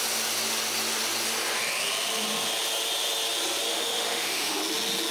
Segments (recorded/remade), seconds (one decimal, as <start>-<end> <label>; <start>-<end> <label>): 0.0-3.7 recorded; 3.7-4.6 remade; 4.6-5.1 recorded